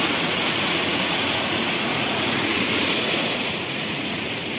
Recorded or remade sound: remade